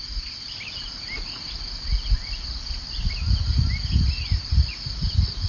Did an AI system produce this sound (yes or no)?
no